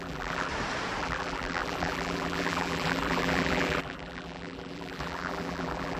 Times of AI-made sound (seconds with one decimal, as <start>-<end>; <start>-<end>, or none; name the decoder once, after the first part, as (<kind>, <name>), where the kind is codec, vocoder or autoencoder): 0.0-0.5 (vocoder, BigVGAN v2); 1.0-6.0